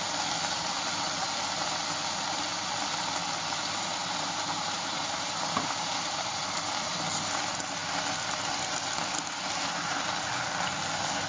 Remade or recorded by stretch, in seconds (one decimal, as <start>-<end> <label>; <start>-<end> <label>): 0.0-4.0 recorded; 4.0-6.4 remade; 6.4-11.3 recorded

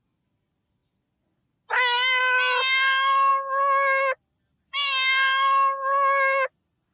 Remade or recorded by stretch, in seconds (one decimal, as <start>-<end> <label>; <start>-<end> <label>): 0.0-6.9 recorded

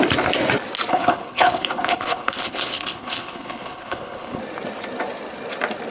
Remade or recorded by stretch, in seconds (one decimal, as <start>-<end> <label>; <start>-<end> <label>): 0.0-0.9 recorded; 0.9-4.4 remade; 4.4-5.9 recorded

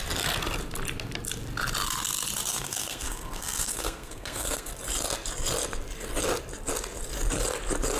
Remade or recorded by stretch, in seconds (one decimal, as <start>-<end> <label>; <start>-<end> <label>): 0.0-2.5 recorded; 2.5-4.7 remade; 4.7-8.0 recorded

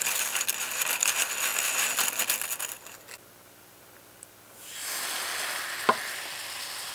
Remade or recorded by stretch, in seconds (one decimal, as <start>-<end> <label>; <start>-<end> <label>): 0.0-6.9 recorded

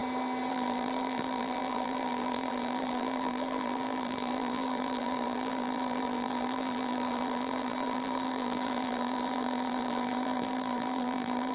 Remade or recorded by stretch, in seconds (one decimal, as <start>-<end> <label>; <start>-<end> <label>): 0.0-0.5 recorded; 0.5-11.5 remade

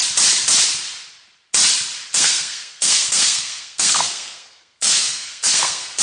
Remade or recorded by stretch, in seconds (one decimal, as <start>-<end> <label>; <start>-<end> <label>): 0.0-2.1 recorded; 2.1-6.0 remade